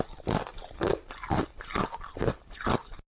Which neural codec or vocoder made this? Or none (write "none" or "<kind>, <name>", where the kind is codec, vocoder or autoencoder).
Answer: none